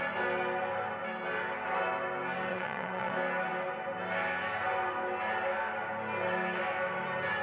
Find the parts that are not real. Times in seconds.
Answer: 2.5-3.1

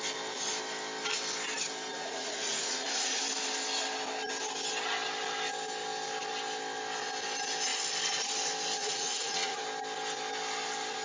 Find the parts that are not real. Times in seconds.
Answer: 1.9-3.2; 8.8-9.6

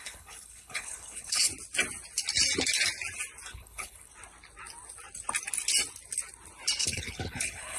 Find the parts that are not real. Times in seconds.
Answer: 0.0-1.5; 3.5-4.1; 6.8-7.8